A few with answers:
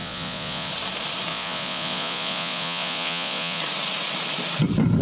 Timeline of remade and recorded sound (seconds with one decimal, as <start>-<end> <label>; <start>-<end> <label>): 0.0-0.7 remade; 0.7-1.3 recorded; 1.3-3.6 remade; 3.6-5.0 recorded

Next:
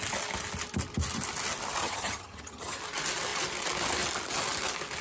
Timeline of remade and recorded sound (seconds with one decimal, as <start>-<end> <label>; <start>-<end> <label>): 0.0-1.8 recorded; 1.8-2.8 remade; 2.8-5.0 recorded

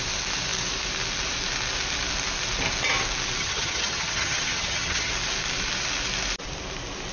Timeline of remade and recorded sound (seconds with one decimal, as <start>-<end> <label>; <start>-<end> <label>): 0.0-3.4 recorded; 3.4-5.1 remade; 5.1-7.1 recorded